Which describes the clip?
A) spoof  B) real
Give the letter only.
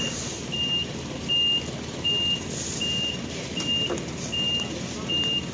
B